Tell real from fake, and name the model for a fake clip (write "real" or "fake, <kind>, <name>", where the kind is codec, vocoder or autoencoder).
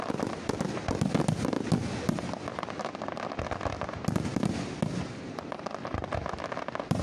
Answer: real